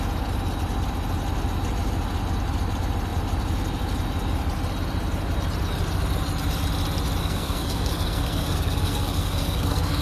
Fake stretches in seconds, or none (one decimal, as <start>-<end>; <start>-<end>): 7.2-10.0